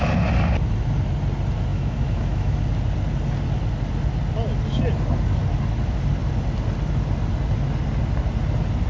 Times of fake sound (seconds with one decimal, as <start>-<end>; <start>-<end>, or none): 1.7-2.6